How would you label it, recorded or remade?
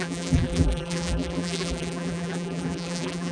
remade